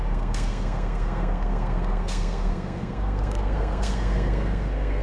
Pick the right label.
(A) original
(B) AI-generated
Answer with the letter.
B